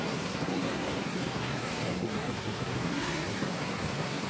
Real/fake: fake